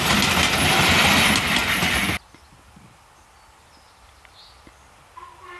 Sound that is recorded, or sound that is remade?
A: recorded